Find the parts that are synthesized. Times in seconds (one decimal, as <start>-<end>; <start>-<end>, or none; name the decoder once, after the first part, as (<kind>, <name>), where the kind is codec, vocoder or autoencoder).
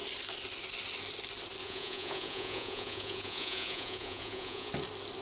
1.6-4.7 (vocoder, Vocos)